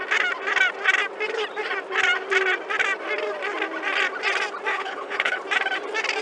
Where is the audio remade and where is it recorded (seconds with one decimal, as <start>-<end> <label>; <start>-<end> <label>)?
0.0-4.7 recorded; 4.7-5.4 remade; 5.4-6.2 recorded